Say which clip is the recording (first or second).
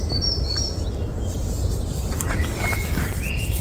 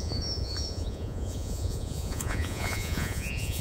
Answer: first